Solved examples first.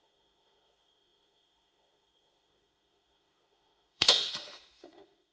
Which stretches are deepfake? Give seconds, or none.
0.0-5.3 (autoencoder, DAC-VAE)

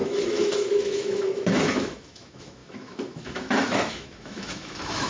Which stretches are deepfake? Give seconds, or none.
0.0-5.1 (autoencoder, DAC-VAE)

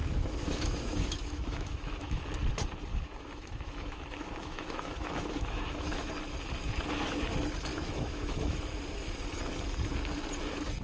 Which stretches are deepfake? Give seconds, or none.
0.0-2.2 (autoencoder, DAC-VAE); 2.9-6.1; 7.7-8.6

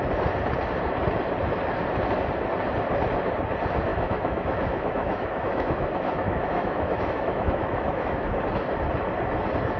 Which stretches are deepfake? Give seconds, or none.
3.9-8.4 (autoencoder, DAC-VAE)

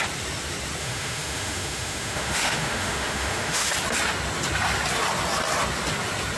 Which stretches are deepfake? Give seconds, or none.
0.8-3.7 (autoencoder, DAC-VAE)

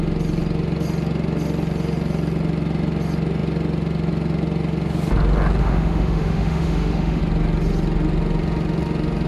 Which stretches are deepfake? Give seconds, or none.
5.6-7.2 (autoencoder, DAC-VAE)

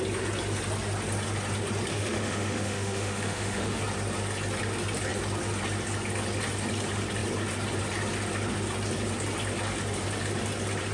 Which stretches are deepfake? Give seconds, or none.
1.9-3.8 (autoencoder, DAC-VAE)